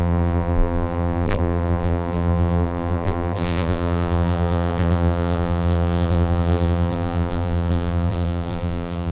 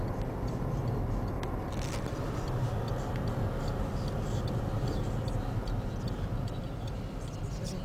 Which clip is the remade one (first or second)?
first